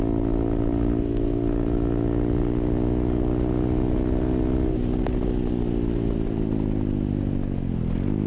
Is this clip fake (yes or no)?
no